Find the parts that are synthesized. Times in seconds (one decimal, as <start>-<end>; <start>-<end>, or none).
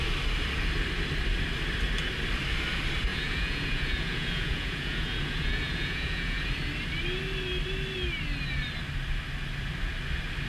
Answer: 3.1-6.5